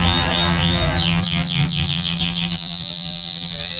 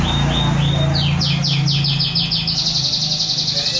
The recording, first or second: second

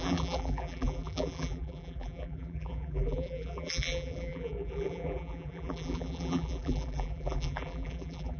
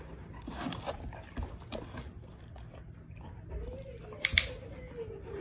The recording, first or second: second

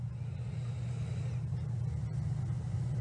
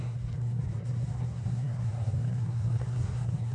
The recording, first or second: first